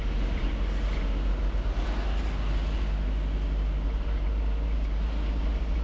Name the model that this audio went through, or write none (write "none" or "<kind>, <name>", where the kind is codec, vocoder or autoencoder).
none